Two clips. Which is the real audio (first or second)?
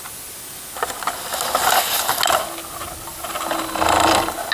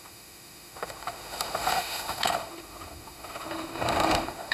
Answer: first